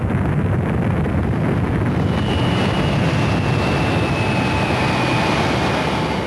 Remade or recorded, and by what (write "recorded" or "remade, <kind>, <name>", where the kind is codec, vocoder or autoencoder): recorded